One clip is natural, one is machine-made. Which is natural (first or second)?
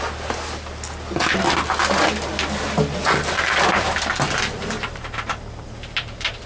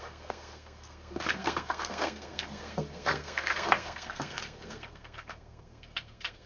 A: first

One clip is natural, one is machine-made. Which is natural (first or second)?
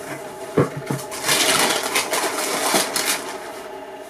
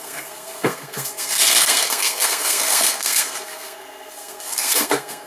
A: first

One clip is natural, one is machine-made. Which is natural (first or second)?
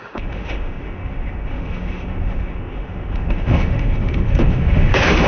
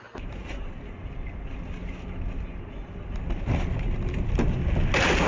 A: second